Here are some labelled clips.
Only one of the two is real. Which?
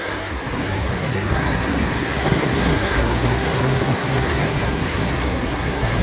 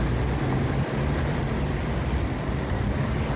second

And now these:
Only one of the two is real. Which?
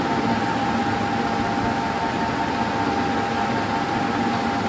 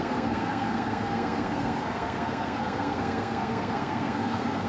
first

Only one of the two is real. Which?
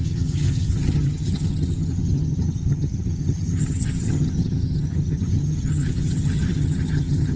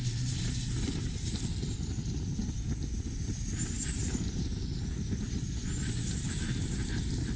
second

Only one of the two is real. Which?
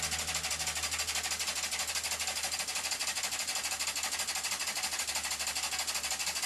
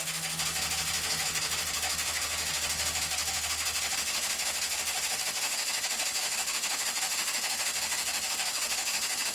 first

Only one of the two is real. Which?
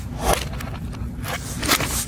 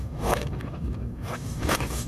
first